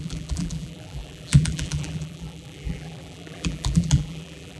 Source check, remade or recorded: remade